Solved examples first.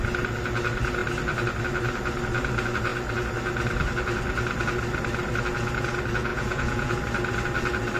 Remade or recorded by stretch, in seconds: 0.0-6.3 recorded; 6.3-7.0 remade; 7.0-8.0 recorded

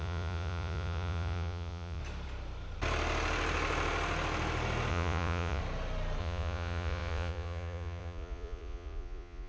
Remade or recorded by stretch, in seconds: 0.0-2.0 remade; 2.0-4.9 recorded; 4.9-5.6 remade; 5.6-6.2 recorded; 6.2-9.5 remade

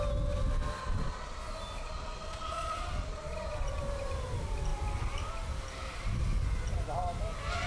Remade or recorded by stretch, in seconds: 0.0-0.8 recorded; 0.8-1.4 remade; 1.4-1.8 recorded; 1.8-3.8 remade; 3.8-7.7 recorded

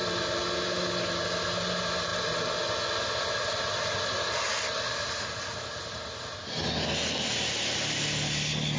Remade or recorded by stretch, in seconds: 0.0-8.8 recorded

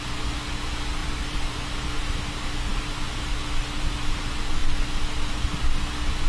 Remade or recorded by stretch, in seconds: 0.0-6.3 recorded

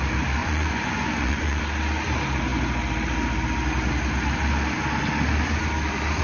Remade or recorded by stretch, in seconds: 0.0-0.4 recorded; 0.4-1.6 remade; 1.6-6.2 recorded

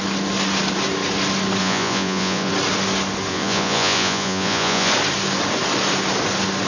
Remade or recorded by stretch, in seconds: 0.0-1.6 recorded; 1.6-2.5 remade; 2.5-3.3 recorded; 3.3-4.9 remade; 4.9-6.7 recorded

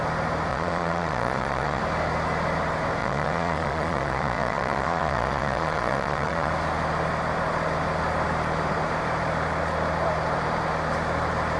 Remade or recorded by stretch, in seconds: 0.0-0.5 recorded; 0.5-1.8 remade; 1.8-3.0 recorded; 3.0-6.5 remade; 6.5-11.6 recorded